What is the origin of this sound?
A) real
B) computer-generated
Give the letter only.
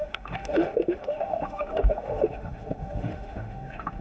B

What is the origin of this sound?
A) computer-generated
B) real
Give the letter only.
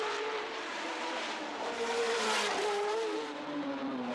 A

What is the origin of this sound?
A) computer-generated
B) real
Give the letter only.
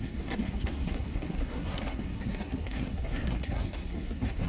A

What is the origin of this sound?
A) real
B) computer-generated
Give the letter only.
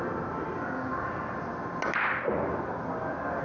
A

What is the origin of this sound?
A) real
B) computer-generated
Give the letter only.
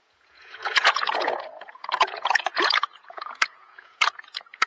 B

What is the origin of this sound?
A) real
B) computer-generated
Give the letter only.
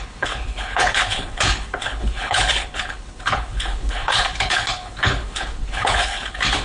B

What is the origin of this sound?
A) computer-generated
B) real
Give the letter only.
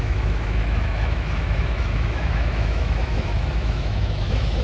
A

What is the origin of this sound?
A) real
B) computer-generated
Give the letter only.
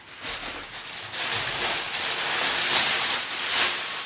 A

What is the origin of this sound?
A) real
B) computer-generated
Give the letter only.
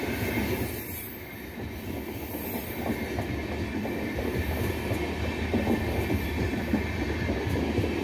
A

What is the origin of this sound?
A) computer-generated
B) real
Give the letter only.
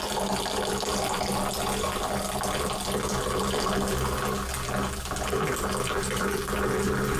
B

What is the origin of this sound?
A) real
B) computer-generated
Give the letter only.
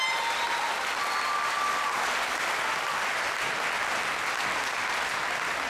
A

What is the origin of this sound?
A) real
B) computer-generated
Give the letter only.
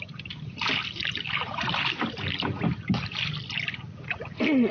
A